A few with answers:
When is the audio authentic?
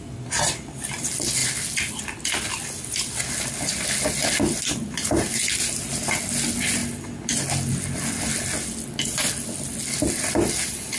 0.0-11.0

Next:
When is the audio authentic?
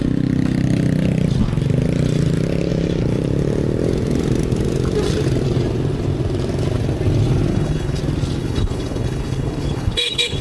0.0-7.5; 8.0-8.4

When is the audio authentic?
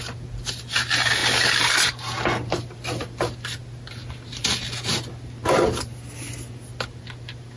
0.0-7.6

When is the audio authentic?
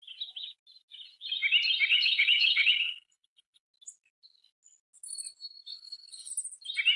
0.0-1.9; 3.7-5.7; 6.3-7.0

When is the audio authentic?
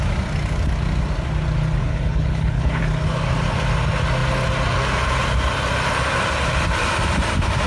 0.0-1.8; 2.8-7.7